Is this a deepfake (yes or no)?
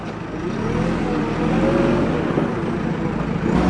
no